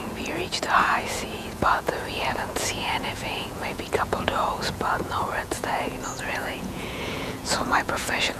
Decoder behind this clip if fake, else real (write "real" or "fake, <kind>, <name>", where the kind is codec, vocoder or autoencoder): fake, vocoder, Vocos